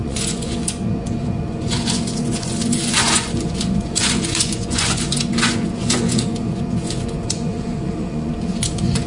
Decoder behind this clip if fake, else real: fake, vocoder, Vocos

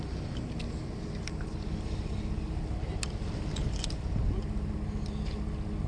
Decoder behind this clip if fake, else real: real